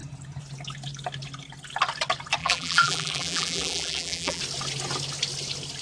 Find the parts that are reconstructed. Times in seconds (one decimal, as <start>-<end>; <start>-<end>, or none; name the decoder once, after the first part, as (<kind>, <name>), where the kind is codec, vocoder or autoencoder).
2.4-4.4 (vocoder, BigVGAN v2)